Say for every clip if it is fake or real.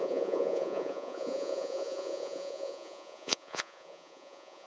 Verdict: fake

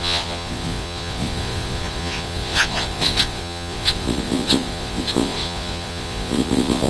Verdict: fake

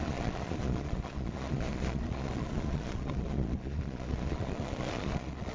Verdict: fake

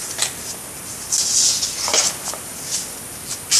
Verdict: real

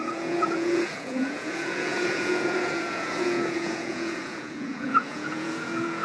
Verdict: fake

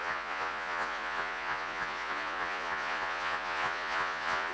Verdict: fake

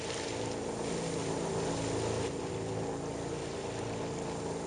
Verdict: real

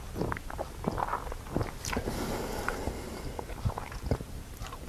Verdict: real